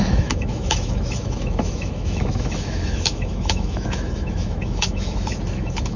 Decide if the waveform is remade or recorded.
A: remade